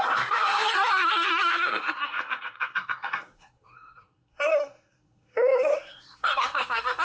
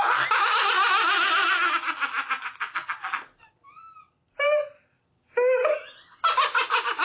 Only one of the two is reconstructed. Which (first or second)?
first